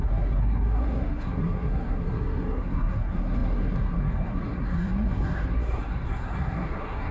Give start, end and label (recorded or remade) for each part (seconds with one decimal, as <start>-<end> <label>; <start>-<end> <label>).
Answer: 0.0-7.1 remade